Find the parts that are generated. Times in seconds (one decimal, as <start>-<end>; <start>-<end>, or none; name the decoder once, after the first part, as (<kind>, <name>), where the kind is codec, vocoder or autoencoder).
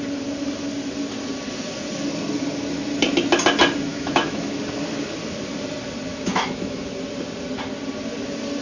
3.9-4.6 (autoencoder, DAC-VAE); 6.1-6.9